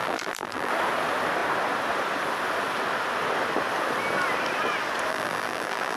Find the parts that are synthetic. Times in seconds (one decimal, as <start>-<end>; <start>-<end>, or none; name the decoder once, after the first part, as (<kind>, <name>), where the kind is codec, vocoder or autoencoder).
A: 0.0-0.7 (vocoder, BigVGAN v2); 5.1-6.0